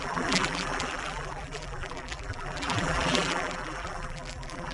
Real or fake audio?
fake